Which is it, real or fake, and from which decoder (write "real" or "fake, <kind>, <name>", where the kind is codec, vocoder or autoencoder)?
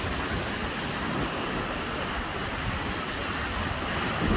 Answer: real